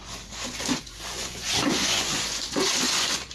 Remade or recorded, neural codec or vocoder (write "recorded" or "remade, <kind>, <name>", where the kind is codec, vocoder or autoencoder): remade, vocoder, Vocos